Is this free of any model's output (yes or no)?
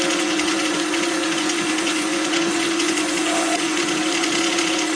no